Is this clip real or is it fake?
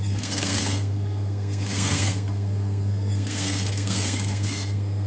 fake